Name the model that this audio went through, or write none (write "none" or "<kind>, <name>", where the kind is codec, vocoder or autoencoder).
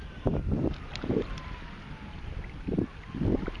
none